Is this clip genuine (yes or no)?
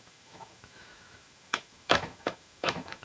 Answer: no